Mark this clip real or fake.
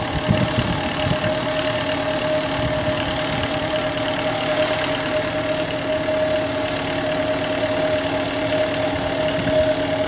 real